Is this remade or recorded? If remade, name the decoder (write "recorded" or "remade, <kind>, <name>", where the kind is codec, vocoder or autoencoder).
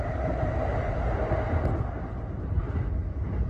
recorded